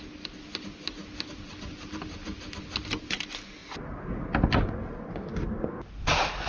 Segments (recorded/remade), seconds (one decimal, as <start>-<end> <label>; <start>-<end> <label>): 0.0-6.5 recorded